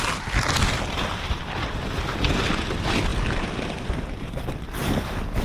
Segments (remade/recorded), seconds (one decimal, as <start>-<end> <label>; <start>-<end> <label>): 0.0-5.4 recorded

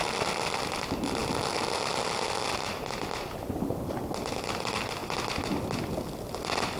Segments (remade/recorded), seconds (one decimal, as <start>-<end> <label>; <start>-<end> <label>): 0.0-6.8 recorded

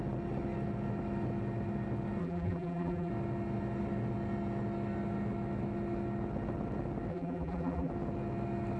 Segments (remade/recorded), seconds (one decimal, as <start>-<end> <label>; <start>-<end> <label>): 0.0-2.2 recorded; 2.2-3.1 remade; 3.1-7.1 recorded; 7.1-7.9 remade; 7.9-8.8 recorded

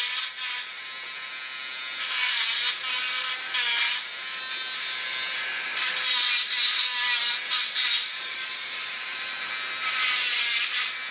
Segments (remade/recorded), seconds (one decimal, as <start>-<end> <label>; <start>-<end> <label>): 0.0-7.2 recorded; 7.2-10.4 remade; 10.4-11.1 recorded

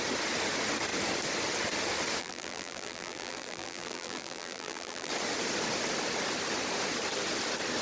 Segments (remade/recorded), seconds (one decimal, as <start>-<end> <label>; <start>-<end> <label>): 0.0-2.2 recorded; 2.2-5.1 remade; 5.1-7.8 recorded

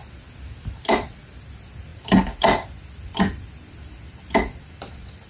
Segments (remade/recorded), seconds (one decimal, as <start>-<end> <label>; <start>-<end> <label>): 0.0-1.4 recorded; 1.4-5.3 remade

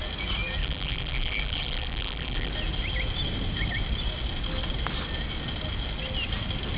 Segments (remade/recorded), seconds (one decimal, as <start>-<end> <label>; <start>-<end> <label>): 0.0-0.6 recorded; 0.6-2.5 remade; 2.5-6.8 recorded